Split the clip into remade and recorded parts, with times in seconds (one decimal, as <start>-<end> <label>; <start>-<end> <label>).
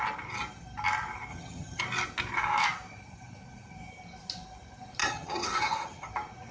0.0-1.3 recorded; 1.3-1.8 remade; 1.8-5.0 recorded; 5.0-6.1 remade; 6.1-6.5 recorded